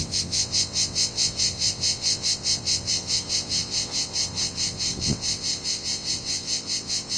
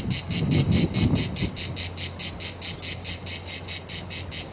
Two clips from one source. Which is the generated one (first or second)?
first